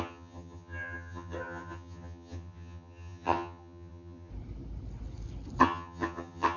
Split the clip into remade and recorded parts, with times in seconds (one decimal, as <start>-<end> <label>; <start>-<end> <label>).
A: 0.0-4.3 remade; 4.3-5.6 recorded; 5.6-6.6 remade